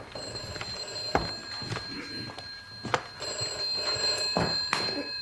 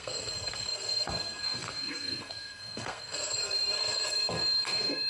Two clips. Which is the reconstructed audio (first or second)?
second